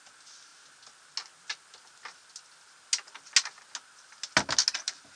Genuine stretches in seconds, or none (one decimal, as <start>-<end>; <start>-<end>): 0.0-5.2